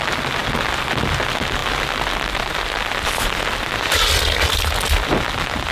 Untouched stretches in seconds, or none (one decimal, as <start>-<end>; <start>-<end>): 0.0-5.7